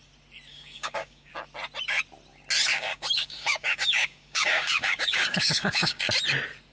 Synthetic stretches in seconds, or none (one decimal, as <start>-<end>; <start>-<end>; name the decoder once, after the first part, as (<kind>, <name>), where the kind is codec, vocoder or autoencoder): 0.5-1.3 (codec, DAC); 2.7-6.0